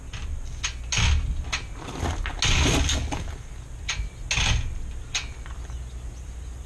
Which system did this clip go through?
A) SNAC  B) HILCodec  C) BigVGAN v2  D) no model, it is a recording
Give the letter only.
D